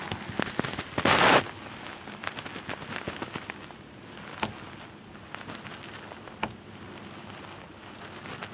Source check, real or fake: real